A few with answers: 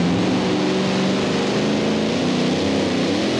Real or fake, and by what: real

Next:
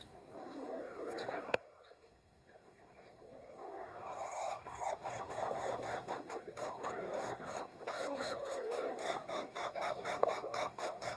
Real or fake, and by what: fake, codec, SNAC